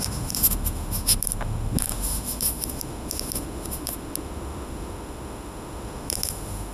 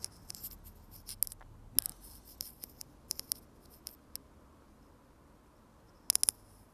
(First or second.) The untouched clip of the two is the second